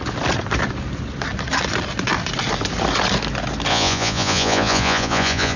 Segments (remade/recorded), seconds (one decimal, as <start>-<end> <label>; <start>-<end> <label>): 0.0-3.7 recorded; 3.7-5.6 remade